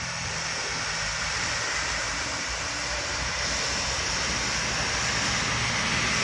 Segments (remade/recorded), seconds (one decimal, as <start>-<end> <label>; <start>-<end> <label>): 0.0-0.6 recorded; 0.6-4.3 remade; 4.3-6.2 recorded